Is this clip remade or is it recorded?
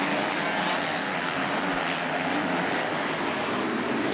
recorded